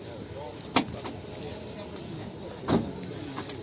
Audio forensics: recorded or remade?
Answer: recorded